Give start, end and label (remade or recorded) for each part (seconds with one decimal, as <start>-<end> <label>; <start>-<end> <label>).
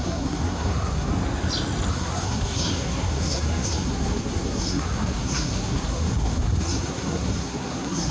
0.0-1.1 remade; 1.1-1.9 recorded; 1.9-8.1 remade